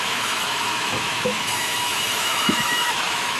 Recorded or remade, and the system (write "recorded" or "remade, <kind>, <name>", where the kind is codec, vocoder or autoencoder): remade, autoencoder, DAC-VAE